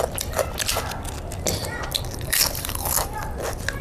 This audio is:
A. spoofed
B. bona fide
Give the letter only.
A